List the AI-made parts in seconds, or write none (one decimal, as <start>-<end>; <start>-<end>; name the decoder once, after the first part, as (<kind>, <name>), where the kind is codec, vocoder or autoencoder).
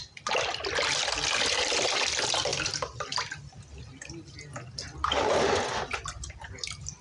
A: none